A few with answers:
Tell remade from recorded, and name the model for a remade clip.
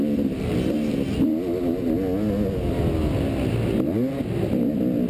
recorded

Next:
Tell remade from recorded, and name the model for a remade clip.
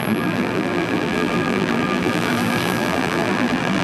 remade, vocoder, BigVGAN v2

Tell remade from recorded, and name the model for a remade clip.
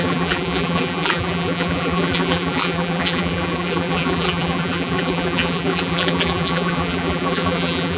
remade, vocoder, BigVGAN v2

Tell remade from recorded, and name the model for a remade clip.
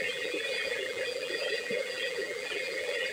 remade, vocoder, BigVGAN v2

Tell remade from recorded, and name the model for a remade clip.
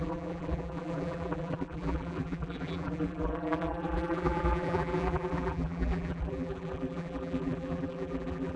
remade, vocoder, BigVGAN v2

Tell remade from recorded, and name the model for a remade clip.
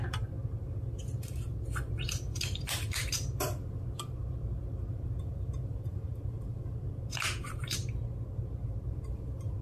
remade, vocoder, BigVGAN v2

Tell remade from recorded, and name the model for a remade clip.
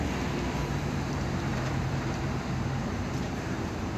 remade, vocoder, BigVGAN v2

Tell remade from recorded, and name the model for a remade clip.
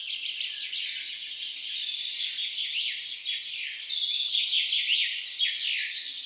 remade, vocoder, BigVGAN v2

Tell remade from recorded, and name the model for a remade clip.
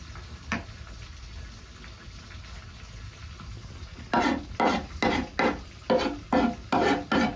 recorded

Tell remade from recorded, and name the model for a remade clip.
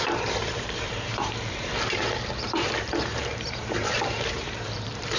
remade, vocoder, BigVGAN v2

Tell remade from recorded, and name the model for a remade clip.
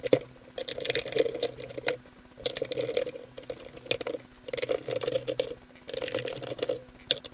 recorded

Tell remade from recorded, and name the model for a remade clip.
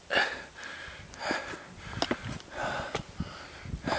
recorded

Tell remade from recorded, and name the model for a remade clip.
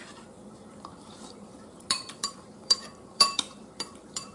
remade, vocoder, BigVGAN v2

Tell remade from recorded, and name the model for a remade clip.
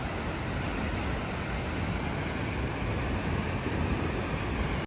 recorded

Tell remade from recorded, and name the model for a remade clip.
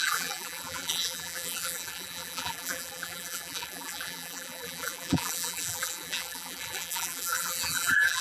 remade, vocoder, BigVGAN v2